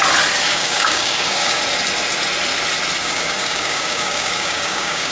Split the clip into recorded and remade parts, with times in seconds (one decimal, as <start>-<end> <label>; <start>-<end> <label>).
0.0-0.5 recorded; 0.5-1.6 remade; 1.6-3.0 recorded; 3.0-5.1 remade